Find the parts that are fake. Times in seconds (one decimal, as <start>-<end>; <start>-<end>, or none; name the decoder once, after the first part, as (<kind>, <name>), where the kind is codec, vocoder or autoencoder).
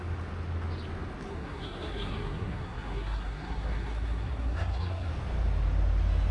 1.3-5.1 (codec, SNAC)